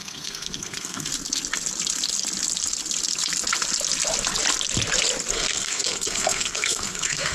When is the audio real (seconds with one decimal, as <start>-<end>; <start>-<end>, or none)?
1.1-5.3